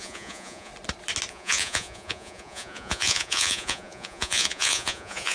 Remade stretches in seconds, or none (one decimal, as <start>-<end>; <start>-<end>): 0.0-0.7; 1.3-5.3